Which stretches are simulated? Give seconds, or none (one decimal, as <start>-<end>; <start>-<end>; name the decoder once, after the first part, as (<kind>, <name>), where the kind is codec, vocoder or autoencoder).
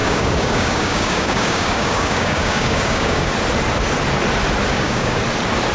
0.0-3.3 (codec, DAC); 4.7-5.2